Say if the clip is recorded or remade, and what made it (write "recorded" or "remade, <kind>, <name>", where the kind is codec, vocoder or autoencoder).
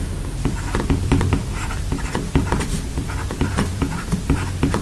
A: remade, vocoder, BigVGAN v2